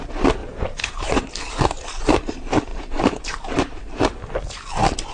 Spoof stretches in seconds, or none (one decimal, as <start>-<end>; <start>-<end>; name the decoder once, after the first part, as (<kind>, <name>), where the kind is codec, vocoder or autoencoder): 0.4-1.5 (vocoder, BigVGAN v2); 2.7-3.8